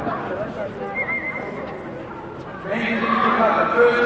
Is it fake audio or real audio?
real